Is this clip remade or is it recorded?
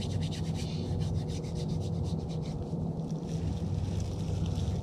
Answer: recorded